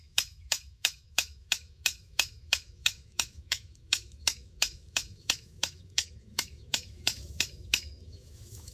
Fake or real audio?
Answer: fake